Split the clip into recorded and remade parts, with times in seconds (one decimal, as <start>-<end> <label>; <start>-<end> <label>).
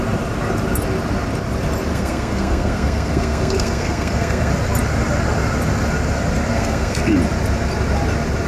0.0-1.9 recorded; 1.9-4.5 remade; 4.5-6.5 recorded; 6.5-7.1 remade; 7.1-8.5 recorded